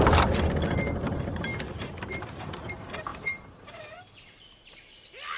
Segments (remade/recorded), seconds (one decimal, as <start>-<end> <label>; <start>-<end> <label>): 0.0-1.5 recorded; 1.5-2.7 remade; 2.7-3.1 recorded; 3.1-4.1 remade; 4.1-5.4 recorded